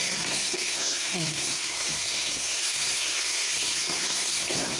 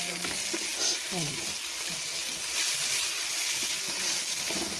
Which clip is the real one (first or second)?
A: second